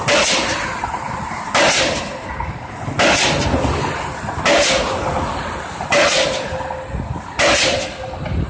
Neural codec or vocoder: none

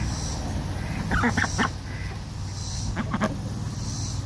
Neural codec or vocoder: none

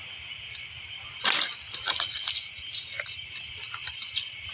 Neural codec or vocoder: none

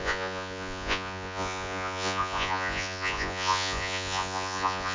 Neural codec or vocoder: vocoder, Vocos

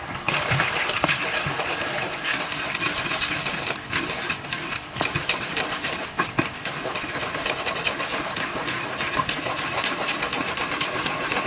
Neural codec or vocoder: none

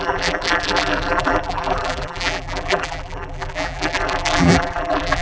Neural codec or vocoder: vocoder, BigVGAN v2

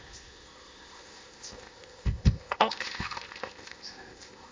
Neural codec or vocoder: codec, ZipCodec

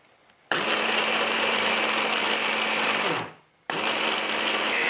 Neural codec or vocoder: none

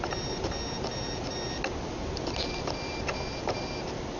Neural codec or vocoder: none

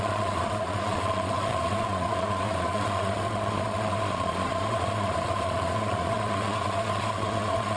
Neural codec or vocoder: vocoder, Vocos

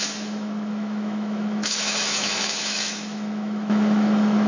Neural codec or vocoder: autoencoder, DAC-VAE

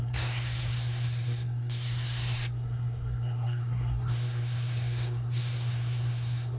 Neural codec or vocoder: codec, SNAC